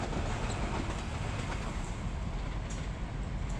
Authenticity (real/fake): real